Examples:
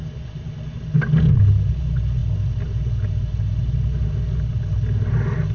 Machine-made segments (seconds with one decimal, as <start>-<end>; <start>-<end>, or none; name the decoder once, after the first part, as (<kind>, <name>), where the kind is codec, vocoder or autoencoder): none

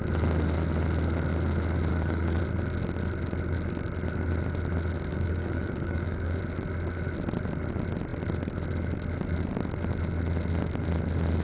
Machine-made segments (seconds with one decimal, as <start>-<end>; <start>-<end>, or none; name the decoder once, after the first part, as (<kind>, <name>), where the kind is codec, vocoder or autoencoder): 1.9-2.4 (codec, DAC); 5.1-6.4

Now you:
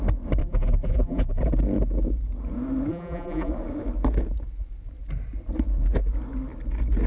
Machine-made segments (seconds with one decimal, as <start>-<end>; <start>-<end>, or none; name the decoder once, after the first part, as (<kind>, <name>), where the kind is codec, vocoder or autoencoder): 0.4-1.4 (vocoder, BigVGAN v2); 2.9-3.5